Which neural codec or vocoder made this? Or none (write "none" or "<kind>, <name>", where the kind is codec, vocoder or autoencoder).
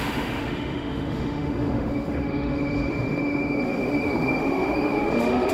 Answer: autoencoder, DAC-VAE